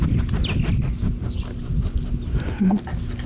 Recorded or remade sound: recorded